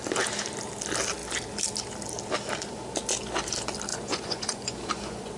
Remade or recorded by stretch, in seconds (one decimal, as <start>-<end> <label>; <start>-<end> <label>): 0.0-3.9 recorded; 3.9-5.4 remade